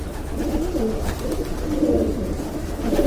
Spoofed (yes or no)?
no